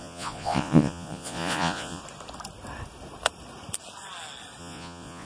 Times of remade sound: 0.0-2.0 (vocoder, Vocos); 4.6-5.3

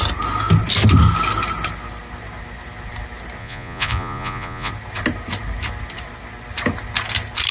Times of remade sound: 3.4-4.7 (vocoder, Vocos)